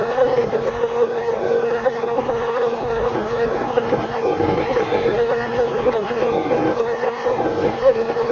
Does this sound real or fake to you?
fake